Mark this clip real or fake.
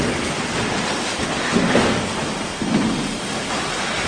real